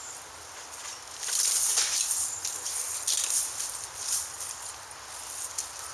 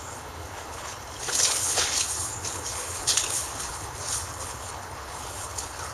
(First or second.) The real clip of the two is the first